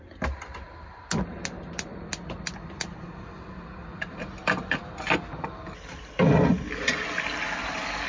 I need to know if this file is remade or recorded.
recorded